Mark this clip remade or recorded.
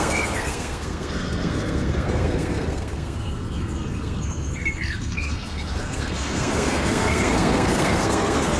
remade